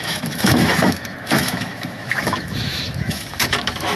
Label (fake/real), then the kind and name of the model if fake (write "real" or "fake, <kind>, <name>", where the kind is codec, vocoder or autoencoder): fake, autoencoder, DAC-VAE